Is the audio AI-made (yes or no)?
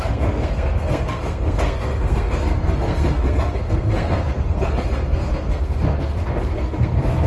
yes